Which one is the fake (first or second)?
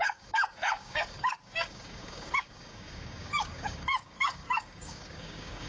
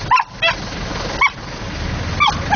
first